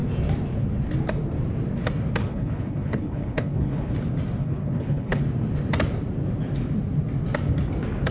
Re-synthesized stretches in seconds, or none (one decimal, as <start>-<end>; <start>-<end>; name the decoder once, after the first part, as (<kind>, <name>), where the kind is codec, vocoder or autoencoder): 2.2-3.9 (codec, HILCodec); 4.4-5.2